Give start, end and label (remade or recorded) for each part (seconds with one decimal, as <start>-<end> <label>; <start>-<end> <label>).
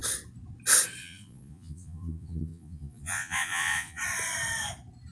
0.0-1.0 recorded; 1.0-4.0 remade; 4.0-5.1 recorded